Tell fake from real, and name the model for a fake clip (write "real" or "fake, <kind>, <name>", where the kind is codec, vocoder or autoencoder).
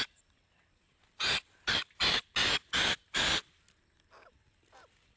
real